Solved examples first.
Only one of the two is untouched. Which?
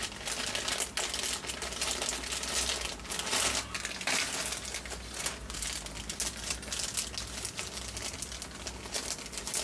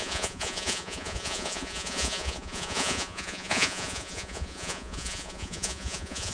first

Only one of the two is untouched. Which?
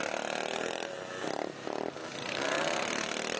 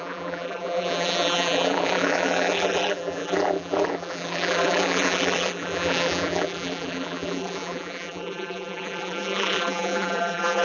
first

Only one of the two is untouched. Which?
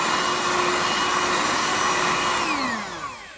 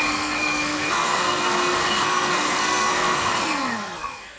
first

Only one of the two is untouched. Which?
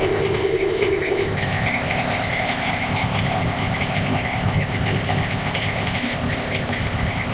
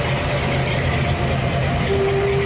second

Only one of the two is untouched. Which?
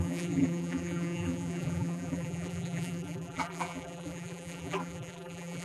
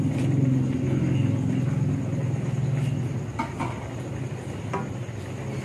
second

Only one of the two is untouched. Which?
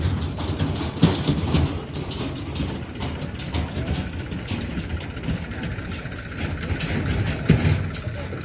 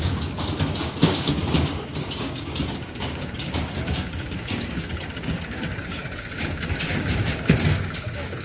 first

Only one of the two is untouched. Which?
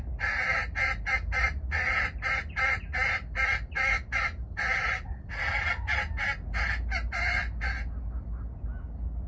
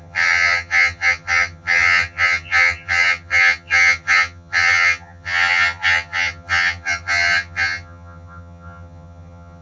first